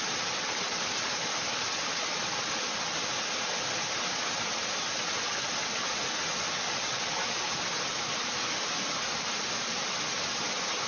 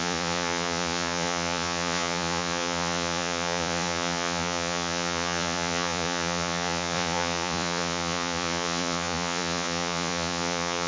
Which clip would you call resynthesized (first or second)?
second